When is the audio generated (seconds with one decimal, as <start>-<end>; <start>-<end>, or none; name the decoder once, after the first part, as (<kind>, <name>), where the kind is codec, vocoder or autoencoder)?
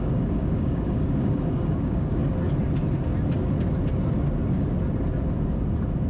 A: 0.0-2.2 (codec, DAC)